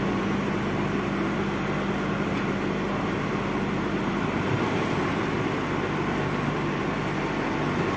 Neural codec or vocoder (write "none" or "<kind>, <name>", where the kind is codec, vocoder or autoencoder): none